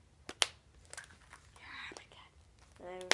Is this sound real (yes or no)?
yes